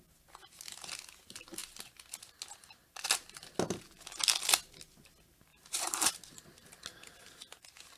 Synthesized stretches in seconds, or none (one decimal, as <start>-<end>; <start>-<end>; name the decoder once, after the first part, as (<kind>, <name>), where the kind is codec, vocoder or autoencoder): 5.5-6.2 (vocoder, BigVGAN v2)